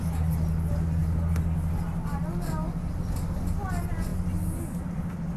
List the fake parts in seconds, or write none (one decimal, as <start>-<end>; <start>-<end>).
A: none